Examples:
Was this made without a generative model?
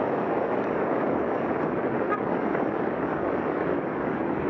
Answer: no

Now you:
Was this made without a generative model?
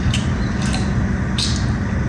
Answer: yes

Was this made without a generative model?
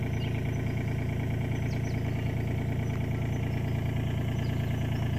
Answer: yes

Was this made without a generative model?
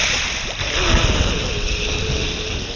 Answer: yes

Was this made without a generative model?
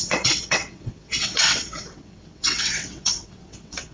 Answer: no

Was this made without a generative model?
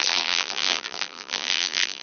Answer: no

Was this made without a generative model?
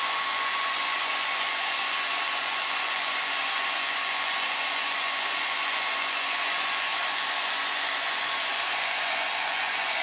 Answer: no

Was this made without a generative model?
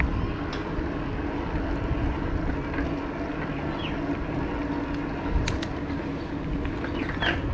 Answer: yes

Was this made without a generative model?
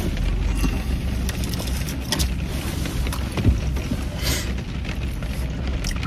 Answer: yes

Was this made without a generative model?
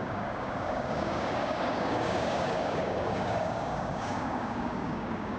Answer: no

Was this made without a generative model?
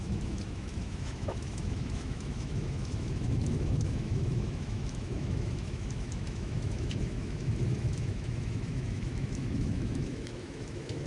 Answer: no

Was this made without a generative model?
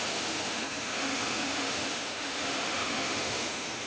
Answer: no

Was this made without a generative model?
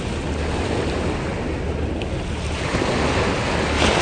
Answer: yes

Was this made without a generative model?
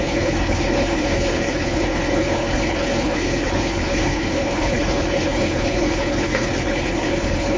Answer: no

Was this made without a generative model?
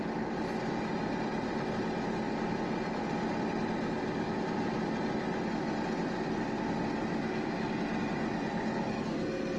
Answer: yes